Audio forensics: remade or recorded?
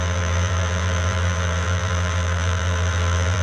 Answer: remade